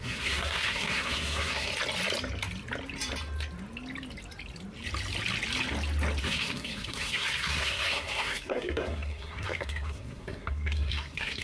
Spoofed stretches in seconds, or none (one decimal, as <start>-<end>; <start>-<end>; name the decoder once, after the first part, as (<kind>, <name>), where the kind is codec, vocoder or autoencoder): 0.0-1.7 (codec, SNAC); 6.2-11.4